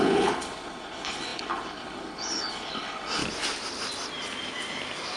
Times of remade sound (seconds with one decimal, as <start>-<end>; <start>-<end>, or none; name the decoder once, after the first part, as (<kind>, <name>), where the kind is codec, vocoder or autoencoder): 0.0-3.2 (codec, HILCodec)

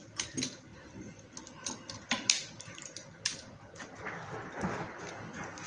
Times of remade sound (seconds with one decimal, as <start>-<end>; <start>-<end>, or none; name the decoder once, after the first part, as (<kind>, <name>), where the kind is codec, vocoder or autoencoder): none

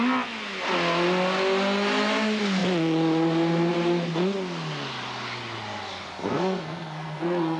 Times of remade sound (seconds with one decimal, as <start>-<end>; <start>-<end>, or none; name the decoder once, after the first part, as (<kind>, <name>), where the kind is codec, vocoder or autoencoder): 6.2-7.6 (codec, SNAC)

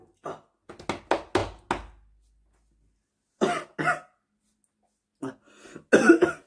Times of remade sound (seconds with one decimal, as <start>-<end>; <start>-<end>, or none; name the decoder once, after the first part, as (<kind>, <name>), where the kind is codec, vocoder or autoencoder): none

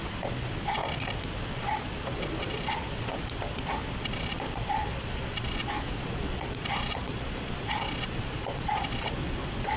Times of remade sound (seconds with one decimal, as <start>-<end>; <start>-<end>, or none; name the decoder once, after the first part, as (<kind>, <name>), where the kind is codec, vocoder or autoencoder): 0.0-0.8 (vocoder, Vocos); 1.5-9.8

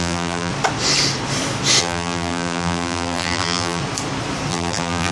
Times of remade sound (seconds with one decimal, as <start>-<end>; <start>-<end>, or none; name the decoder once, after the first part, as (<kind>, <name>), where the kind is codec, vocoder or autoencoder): 0.0-0.5 (vocoder, BigVGAN v2); 1.8-3.8; 4.5-5.1

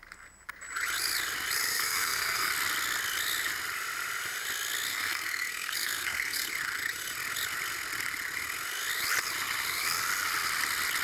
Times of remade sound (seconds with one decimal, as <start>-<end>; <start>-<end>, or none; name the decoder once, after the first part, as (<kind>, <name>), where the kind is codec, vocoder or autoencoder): 1.7-2.5 (codec, SNAC); 4.9-6.5